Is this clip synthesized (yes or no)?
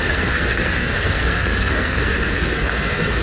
yes